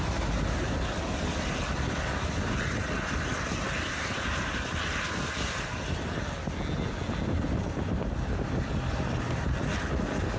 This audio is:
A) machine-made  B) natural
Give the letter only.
B